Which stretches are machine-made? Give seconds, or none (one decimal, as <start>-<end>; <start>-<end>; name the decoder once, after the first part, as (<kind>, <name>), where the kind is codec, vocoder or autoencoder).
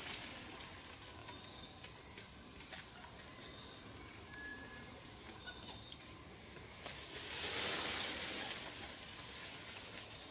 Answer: none